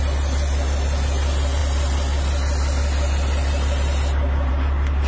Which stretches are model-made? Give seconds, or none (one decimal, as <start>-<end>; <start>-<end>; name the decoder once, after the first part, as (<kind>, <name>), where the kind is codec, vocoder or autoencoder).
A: none